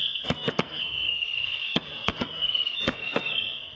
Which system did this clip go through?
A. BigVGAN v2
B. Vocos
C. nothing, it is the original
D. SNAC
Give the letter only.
D